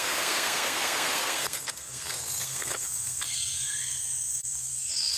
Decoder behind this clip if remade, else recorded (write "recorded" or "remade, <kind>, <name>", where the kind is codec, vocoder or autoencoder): remade, codec, SNAC